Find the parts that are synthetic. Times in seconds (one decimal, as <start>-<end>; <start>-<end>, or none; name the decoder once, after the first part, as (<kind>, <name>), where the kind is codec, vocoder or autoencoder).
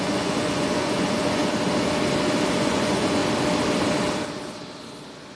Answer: 0.0-1.4 (vocoder, Vocos); 2.5-3.2